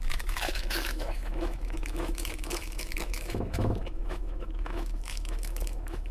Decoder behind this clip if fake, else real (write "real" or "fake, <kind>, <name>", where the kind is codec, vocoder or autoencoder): fake, autoencoder, DAC-VAE